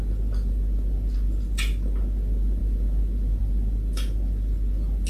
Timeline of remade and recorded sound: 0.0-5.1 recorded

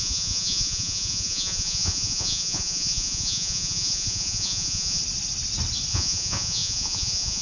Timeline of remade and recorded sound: 0.0-5.0 remade; 5.0-5.9 recorded; 5.9-7.4 remade

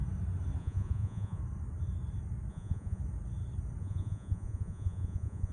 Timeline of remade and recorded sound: 0.0-0.6 recorded; 0.6-1.4 remade; 1.4-2.5 recorded; 2.5-3.0 remade; 3.0-3.8 recorded; 3.8-5.5 remade

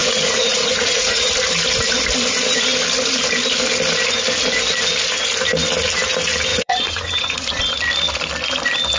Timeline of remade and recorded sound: 0.0-1.3 remade; 1.3-6.5 recorded; 6.5-7.6 remade; 7.6-9.0 recorded

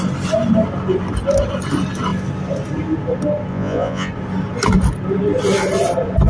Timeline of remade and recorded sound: 0.0-3.5 recorded; 3.5-4.1 remade; 4.1-6.3 recorded